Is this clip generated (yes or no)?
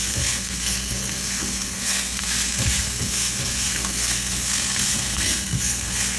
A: yes